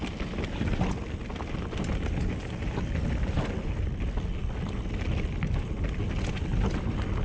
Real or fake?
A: real